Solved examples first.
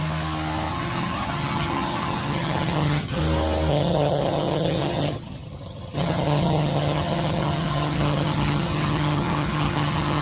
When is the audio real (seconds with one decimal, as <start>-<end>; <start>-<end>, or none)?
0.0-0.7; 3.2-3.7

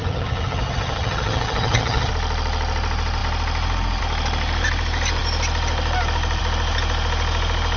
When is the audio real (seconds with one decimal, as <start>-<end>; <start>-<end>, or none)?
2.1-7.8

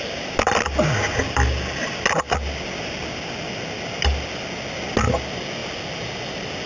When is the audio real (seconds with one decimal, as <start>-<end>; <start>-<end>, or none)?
0.0-6.7

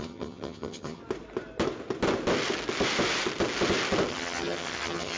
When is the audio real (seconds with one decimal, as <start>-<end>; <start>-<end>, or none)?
1.0-4.1

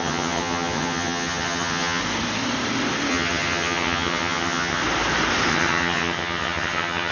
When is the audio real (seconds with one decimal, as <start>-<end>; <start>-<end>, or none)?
2.0-3.1; 4.8-5.5

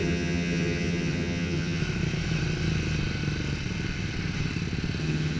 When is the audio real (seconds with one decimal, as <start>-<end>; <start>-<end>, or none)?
1.8-5.0

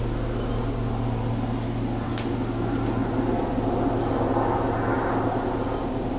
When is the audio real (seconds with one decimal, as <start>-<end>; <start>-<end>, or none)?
0.0-6.2

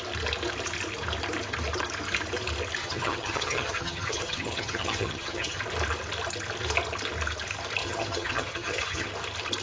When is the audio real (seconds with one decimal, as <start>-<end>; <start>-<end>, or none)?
0.0-2.8; 5.6-7.8; 9.1-9.6